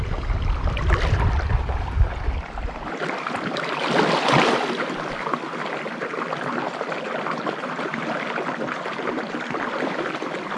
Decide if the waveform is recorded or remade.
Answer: recorded